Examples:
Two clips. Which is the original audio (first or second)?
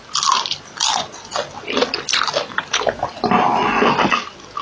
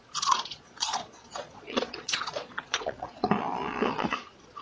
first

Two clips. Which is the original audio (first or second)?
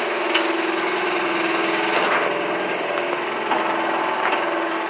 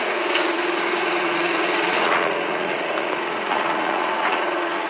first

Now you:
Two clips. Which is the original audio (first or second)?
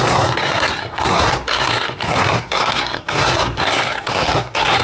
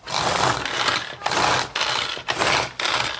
second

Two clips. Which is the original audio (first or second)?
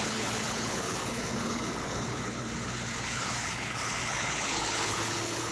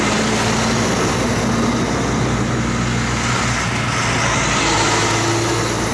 second